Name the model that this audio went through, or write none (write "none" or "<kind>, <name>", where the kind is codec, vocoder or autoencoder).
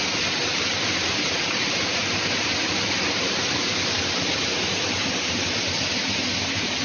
none